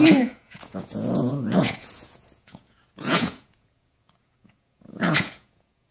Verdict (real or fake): fake